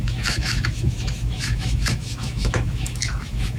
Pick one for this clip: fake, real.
fake